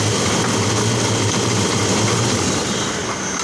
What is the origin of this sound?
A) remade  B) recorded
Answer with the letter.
B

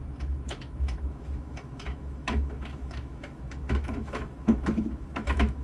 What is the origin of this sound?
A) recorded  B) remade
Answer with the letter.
B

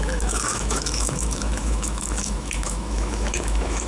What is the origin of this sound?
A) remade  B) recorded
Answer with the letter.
A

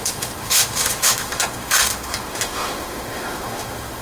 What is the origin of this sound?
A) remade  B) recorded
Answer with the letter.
A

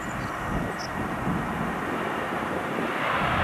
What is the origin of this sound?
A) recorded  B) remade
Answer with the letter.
A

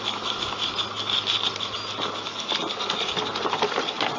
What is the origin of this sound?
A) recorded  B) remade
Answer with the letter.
A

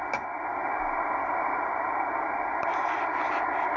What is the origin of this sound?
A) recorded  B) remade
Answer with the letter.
A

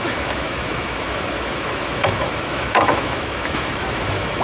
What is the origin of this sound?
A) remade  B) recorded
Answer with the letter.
A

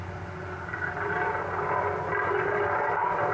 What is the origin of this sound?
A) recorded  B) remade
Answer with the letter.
A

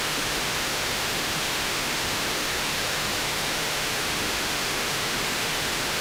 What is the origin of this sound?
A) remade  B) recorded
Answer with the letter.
A